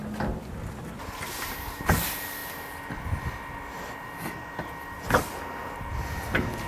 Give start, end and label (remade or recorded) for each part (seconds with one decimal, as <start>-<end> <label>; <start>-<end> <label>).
0.0-0.8 recorded; 0.8-2.4 remade; 2.4-5.8 recorded; 5.8-6.7 remade